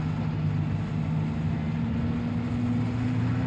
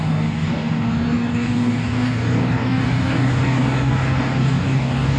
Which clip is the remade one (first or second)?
second